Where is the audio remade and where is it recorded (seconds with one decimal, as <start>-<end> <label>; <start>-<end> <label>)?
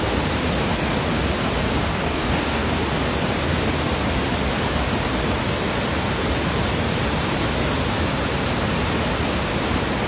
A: 0.0-1.9 recorded; 1.9-2.7 remade; 2.7-10.1 recorded